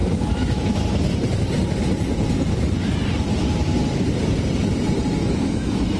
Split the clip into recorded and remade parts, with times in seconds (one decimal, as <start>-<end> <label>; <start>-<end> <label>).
0.0-0.6 remade; 0.6-5.2 recorded; 5.2-6.0 remade